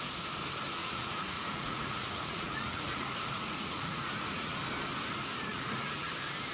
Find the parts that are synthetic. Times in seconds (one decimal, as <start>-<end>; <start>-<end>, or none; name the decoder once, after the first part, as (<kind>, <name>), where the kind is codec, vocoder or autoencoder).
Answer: 0.8-4.6 (vocoder, Vocos); 5.5-6.1